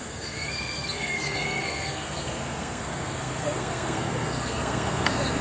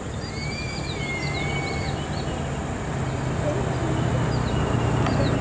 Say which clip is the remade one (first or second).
first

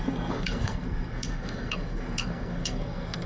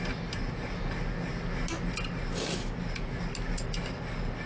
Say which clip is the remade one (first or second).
first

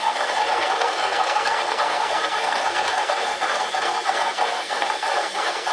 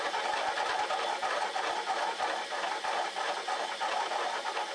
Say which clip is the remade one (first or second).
first